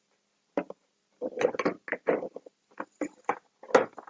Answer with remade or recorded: recorded